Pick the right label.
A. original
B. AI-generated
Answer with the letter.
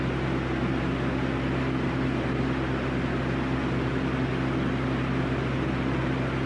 A